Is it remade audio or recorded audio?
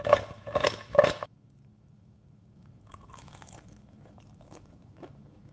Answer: remade